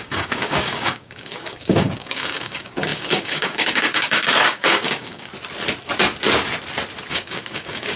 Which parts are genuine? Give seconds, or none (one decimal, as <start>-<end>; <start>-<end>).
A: 5.3-7.1